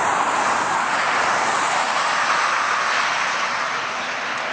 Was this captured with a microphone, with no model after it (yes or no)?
yes